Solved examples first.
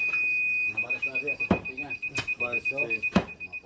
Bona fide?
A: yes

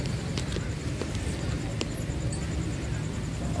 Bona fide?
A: yes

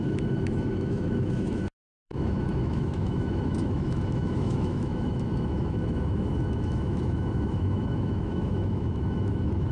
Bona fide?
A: no